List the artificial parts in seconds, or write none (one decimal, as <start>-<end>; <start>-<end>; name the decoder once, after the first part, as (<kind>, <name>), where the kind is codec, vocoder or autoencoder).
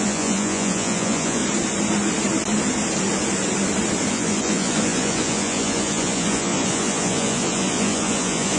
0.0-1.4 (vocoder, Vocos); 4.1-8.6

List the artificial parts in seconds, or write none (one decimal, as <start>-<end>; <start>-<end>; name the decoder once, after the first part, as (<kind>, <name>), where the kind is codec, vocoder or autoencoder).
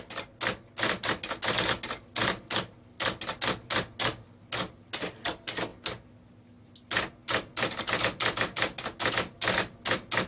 none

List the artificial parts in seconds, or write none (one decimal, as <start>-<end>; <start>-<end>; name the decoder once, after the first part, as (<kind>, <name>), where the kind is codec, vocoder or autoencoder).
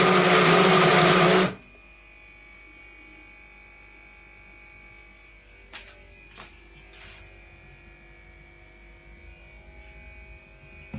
none